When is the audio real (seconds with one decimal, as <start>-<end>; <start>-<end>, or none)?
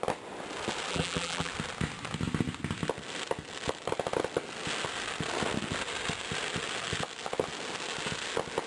0.0-0.9; 1.5-8.7